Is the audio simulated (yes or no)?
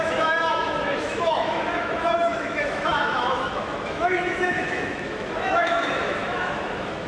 yes